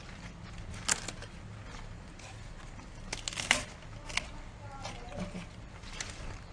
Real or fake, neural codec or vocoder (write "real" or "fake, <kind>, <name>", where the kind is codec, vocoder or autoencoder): real